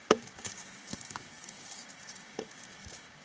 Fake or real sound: fake